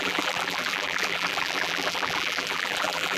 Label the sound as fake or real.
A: fake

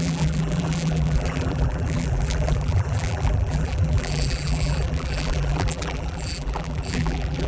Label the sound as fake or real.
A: fake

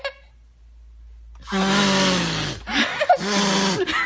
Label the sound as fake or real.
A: real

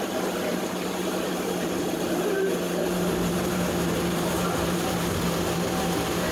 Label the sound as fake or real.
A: fake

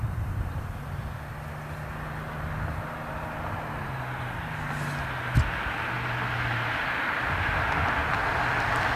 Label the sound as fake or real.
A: real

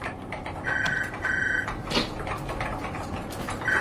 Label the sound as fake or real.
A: fake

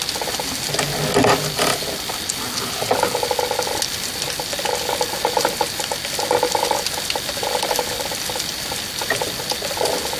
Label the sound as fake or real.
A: real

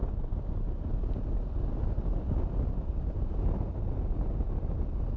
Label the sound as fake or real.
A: real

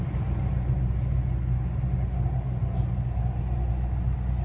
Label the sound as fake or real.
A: real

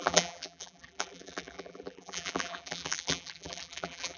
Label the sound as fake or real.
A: fake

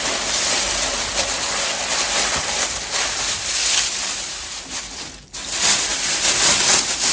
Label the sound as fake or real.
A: fake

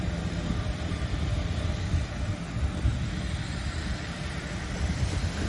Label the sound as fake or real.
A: fake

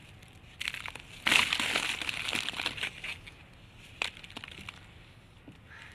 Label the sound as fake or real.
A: real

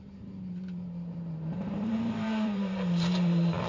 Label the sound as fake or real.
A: fake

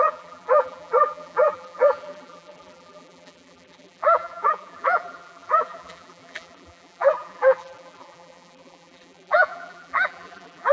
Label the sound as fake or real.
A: fake